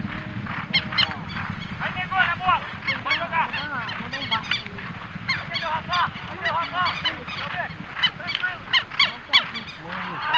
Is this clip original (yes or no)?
yes